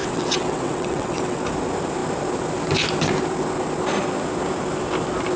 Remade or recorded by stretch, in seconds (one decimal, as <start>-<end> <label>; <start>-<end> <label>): 0.0-1.4 remade; 1.4-5.4 recorded